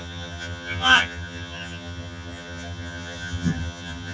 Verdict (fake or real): fake